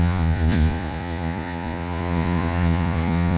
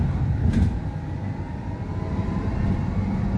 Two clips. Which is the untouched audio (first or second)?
second